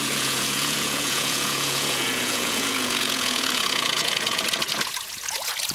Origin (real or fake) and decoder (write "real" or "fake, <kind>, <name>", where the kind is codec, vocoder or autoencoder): fake, vocoder, Vocos